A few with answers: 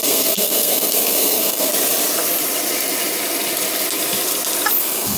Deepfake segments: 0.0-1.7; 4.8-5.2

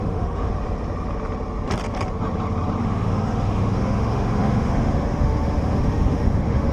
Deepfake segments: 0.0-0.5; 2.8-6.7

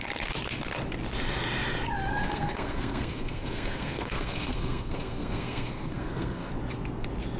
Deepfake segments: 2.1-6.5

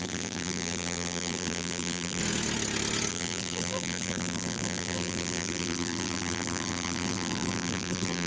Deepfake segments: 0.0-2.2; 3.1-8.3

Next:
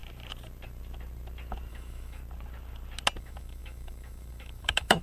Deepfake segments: 1.7-2.2; 3.2-5.0

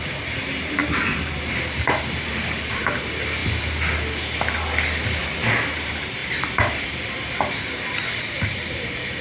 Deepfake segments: 0.0-3.4; 5.2-9.2